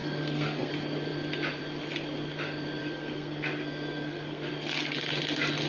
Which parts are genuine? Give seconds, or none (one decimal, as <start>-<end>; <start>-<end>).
0.7-2.8; 4.5-5.7